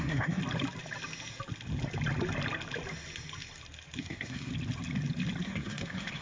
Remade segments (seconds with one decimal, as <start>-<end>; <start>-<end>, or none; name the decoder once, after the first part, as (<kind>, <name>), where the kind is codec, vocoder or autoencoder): 0.0-0.4 (codec, SNAC); 4.0-4.5; 5.4-6.2